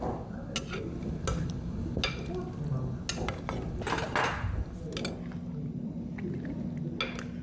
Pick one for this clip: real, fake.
real